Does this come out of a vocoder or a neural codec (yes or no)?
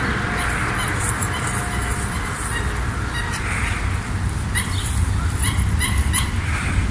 no